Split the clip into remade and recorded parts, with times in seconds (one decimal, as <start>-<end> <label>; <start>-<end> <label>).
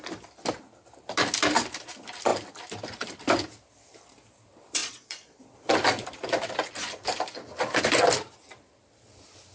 0.0-4.8 recorded; 4.8-5.4 remade; 5.4-9.5 recorded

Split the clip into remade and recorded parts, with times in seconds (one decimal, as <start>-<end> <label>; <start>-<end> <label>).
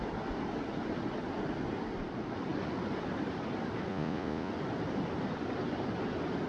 0.0-3.9 recorded; 3.9-4.5 remade; 4.5-6.5 recorded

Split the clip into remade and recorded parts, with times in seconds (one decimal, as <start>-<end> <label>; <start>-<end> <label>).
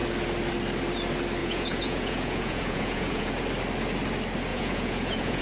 0.0-1.4 recorded; 1.4-3.3 remade; 3.3-4.5 recorded; 4.5-5.4 remade